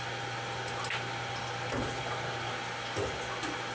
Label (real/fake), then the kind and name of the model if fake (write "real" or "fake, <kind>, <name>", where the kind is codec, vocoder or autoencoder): real